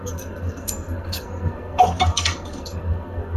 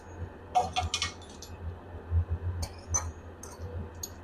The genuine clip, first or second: second